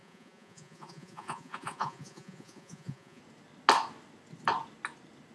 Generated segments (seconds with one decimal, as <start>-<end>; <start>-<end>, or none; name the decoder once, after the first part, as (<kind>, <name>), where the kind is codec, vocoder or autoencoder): 0.0-3.2 (vocoder, Vocos)